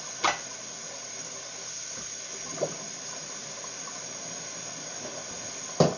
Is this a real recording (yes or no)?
yes